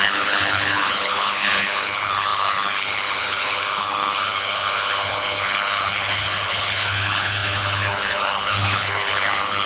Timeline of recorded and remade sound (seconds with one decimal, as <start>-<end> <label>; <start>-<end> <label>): 0.0-9.7 remade